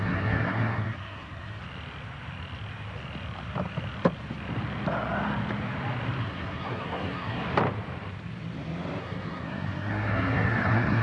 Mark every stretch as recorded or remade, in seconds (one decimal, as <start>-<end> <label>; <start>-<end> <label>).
0.0-1.6 remade; 1.6-6.2 recorded; 6.2-7.4 remade; 7.4-9.0 recorded; 9.0-11.0 remade